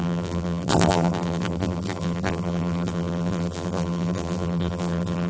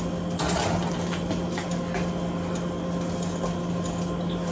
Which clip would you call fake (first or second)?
first